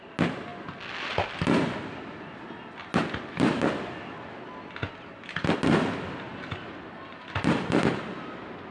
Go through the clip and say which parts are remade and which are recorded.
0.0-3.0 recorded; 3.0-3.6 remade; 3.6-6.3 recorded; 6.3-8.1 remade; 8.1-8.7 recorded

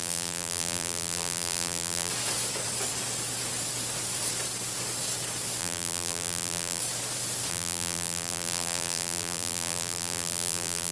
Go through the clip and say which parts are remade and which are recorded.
0.0-2.1 remade; 2.1-5.6 recorded; 5.6-6.8 remade; 6.8-7.5 recorded; 7.5-10.9 remade

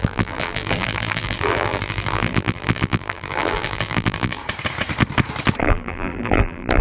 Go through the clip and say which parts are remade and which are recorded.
0.0-4.4 remade; 4.4-5.6 recorded; 5.6-6.8 remade